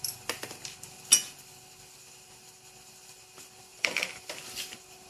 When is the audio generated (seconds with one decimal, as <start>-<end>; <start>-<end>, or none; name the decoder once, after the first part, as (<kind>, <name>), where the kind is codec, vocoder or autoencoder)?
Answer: 3.7-4.2 (vocoder, BigVGAN v2)